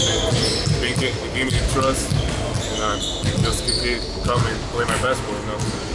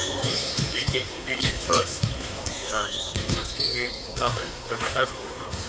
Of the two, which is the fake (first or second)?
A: second